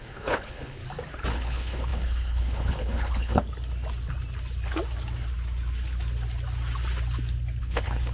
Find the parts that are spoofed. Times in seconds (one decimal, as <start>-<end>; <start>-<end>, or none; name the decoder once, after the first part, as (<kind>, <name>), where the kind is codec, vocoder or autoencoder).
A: 0.0-0.8 (codec, HILCodec); 1.3-3.4; 7.6-8.1